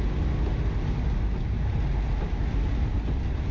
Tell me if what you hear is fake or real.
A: real